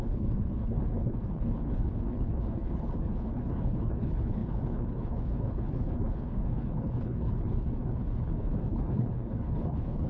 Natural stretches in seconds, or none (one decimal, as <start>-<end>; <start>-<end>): none